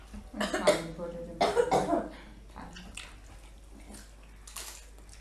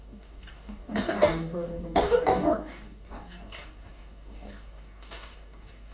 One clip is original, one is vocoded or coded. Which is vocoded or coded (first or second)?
second